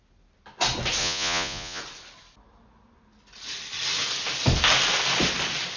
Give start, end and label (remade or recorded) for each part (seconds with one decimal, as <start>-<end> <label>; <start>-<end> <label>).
0.0-1.0 recorded; 1.0-1.8 remade; 1.8-5.8 recorded